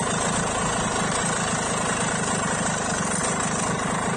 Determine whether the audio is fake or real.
real